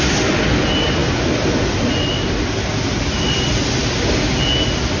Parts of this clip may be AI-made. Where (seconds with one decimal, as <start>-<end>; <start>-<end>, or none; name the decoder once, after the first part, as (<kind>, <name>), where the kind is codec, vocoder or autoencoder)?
none